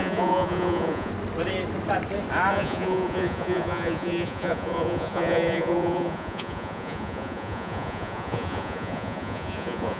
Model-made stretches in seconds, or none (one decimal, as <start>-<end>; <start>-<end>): 0.0-1.1; 2.5-10.0